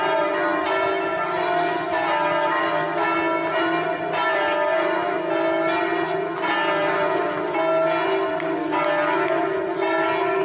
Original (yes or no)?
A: yes